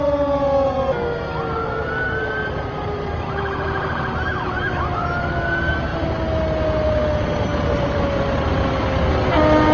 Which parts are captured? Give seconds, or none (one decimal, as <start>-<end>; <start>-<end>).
0.0-1.8; 4.8-7.5; 8.0-9.7